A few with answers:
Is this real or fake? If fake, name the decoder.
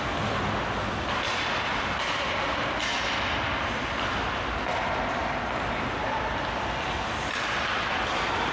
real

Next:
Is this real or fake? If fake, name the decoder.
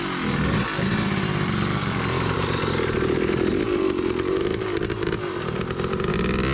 real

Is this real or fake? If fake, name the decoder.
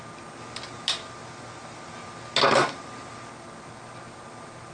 real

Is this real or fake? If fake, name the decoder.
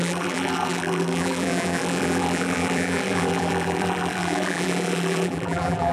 fake, vocoder, BigVGAN v2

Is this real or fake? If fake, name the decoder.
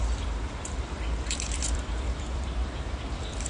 fake, vocoder, BigVGAN v2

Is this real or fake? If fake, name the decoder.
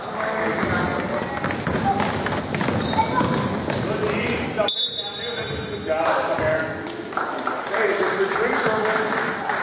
real